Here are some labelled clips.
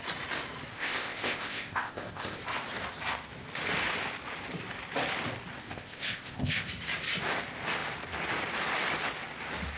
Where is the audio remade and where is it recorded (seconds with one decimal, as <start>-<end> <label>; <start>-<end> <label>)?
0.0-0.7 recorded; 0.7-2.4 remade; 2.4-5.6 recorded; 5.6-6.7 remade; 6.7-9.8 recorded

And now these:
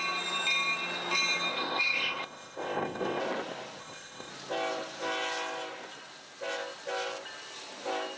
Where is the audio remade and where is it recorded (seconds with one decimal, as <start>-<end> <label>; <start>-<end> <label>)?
0.0-1.5 recorded; 1.5-3.2 remade; 3.2-3.8 recorded; 3.8-4.3 remade; 4.3-8.2 recorded

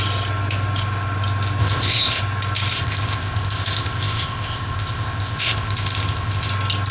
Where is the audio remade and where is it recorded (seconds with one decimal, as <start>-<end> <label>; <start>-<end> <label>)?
0.0-1.6 recorded; 1.6-2.2 remade; 2.2-2.7 recorded; 2.7-6.5 remade; 6.5-6.9 recorded